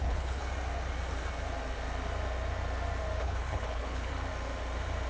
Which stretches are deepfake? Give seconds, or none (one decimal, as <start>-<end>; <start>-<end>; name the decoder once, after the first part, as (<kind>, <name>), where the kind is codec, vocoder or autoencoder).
0.0-0.4 (codec, HILCodec); 3.2-4.1